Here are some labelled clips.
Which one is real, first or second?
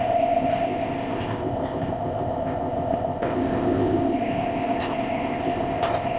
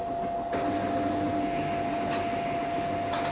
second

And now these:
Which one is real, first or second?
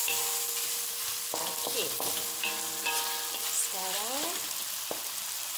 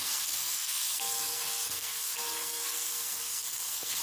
first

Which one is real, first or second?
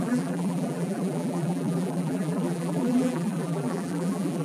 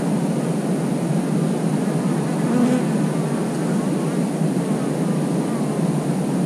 second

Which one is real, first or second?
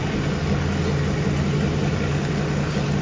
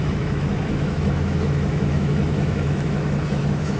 first